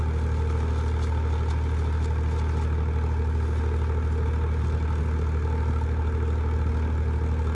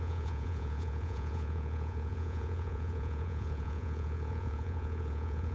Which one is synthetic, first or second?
second